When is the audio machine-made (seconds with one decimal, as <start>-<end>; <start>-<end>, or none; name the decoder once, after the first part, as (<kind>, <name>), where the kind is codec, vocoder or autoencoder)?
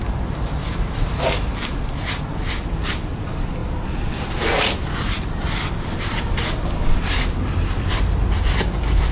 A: none